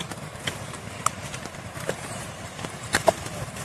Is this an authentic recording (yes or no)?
no